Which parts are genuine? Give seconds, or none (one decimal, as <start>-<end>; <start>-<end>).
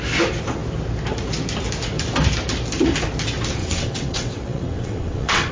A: 0.0-3.6